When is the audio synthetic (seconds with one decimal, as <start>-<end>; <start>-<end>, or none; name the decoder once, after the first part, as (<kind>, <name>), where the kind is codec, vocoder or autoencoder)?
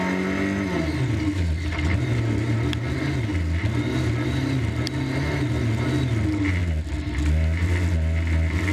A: none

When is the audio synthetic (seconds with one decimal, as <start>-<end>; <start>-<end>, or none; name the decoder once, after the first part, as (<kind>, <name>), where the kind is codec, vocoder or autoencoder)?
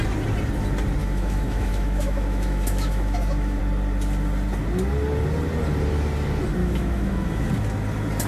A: 1.0-3.6 (autoencoder, DAC-VAE); 6.6-7.5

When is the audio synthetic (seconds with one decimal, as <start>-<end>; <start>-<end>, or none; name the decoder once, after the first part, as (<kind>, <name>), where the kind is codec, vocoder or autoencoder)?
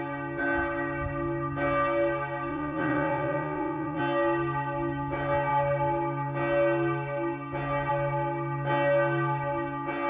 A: 2.5-4.0 (vocoder, Vocos)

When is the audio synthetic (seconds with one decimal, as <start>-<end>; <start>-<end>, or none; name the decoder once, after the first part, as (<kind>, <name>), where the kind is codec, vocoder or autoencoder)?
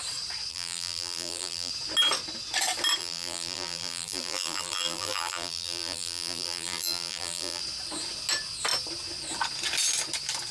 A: 0.5-1.7 (vocoder, BigVGAN v2); 3.0-7.6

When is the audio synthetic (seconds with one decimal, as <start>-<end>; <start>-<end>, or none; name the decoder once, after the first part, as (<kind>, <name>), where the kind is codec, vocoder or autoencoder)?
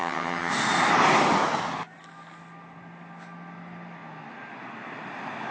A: 0.0-0.5 (vocoder, HiFi-GAN)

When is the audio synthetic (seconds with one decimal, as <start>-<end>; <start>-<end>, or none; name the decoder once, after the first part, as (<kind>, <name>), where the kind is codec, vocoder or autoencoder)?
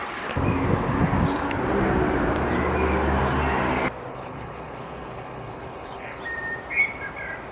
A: 4.1-6.2 (codec, HILCodec)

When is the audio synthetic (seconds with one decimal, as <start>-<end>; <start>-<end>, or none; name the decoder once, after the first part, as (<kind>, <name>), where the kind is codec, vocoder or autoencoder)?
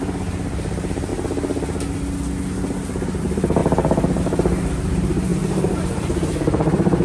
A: 0.0-1.1 (vocoder, BigVGAN v2); 3.2-7.0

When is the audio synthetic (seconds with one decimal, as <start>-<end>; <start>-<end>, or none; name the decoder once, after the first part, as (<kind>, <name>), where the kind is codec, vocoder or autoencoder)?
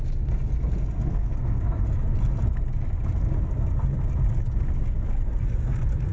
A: 1.1-1.6 (codec, SNAC)